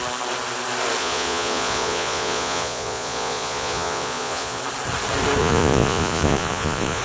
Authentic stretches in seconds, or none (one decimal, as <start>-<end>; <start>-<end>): 0.0-1.0; 4.6-5.4